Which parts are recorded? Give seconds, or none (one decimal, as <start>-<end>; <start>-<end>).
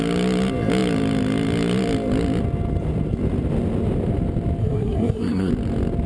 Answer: 0.0-4.6; 5.5-6.1